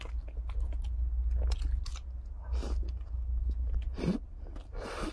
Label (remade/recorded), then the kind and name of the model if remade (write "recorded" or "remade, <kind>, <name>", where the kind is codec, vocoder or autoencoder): recorded